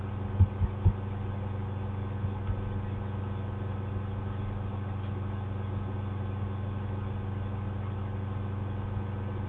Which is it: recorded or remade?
recorded